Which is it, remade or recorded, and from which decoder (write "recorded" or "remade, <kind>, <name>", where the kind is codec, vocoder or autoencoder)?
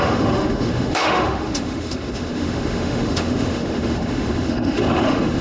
remade, autoencoder, DAC-VAE